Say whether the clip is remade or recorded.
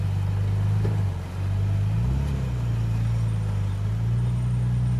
recorded